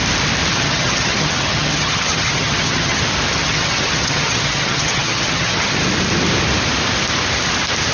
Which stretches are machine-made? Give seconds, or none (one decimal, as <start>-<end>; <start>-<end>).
0.5-3.0; 3.4-5.8